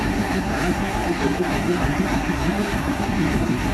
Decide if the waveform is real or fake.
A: fake